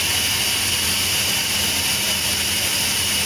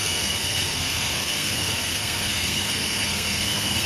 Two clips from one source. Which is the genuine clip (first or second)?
first